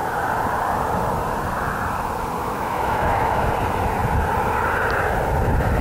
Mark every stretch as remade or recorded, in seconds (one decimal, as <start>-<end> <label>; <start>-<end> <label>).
0.0-2.4 recorded; 2.4-3.5 remade; 3.5-5.8 recorded